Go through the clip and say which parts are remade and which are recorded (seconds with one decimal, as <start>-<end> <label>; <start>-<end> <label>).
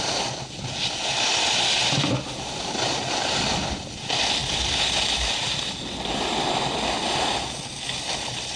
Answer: 0.0-8.6 recorded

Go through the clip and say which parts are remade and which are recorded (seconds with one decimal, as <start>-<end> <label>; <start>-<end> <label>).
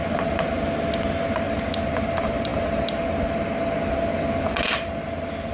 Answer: 0.0-5.5 recorded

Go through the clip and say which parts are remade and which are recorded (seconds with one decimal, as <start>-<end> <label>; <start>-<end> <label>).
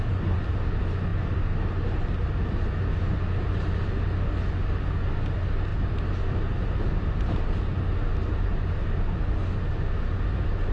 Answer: 0.0-10.7 recorded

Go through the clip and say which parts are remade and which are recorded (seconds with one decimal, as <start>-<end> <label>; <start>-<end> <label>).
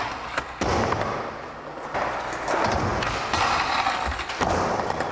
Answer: 0.0-5.1 recorded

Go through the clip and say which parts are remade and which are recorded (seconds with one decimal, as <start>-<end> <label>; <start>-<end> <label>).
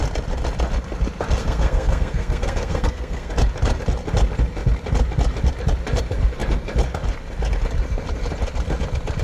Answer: 0.0-1.4 recorded; 1.4-3.3 remade; 3.3-9.2 recorded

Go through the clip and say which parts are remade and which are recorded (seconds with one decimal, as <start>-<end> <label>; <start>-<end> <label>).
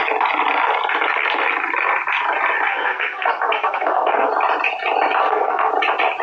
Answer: 0.0-2.7 recorded; 2.7-4.3 remade; 4.3-5.2 recorded; 5.2-5.7 remade; 5.7-6.2 recorded